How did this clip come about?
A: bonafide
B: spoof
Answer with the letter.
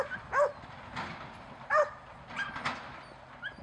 A